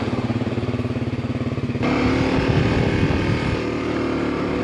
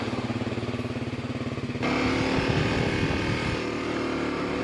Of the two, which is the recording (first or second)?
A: second